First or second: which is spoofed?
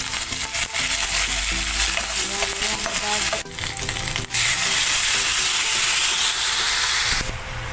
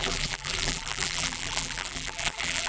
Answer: second